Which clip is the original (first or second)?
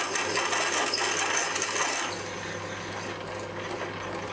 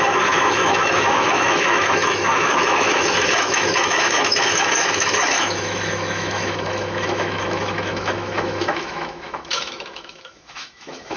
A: first